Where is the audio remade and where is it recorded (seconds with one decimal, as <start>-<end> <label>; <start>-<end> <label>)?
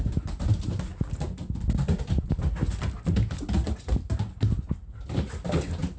0.0-6.0 recorded